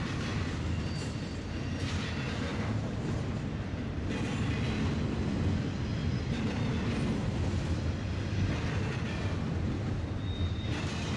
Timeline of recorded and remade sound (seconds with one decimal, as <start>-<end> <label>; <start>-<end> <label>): 0.0-11.2 recorded